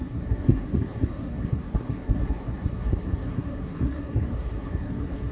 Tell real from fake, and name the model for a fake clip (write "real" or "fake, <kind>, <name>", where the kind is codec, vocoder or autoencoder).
fake, codec, SNAC